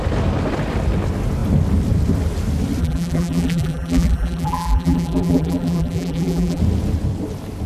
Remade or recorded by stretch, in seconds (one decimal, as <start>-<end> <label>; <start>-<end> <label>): 0.0-2.8 recorded; 2.8-6.6 remade; 6.6-7.7 recorded